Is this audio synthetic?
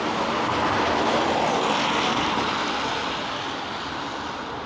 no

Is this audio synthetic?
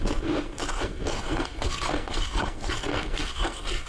yes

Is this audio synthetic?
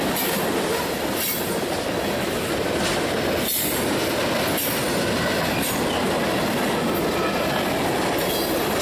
no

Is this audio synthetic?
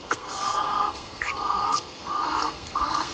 yes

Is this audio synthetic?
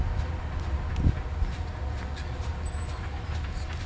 no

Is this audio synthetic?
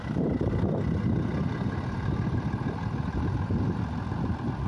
no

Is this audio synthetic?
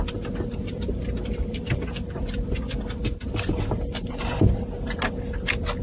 no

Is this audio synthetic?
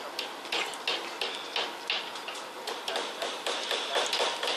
no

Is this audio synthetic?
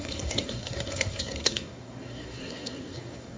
yes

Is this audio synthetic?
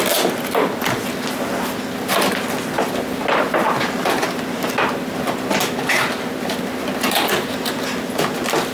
no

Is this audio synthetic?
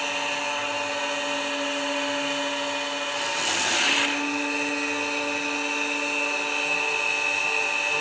no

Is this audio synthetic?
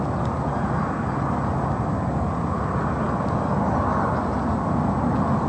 no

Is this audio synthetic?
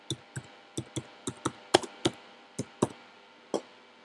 no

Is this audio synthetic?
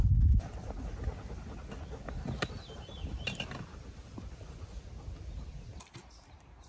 no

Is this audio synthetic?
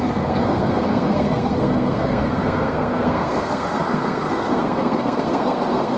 yes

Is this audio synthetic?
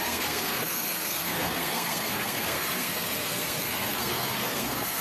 yes